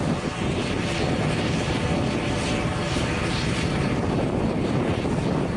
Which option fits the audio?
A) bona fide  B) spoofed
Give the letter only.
A